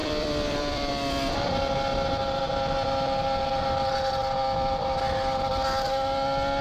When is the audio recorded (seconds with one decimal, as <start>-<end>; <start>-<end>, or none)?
0.9-6.6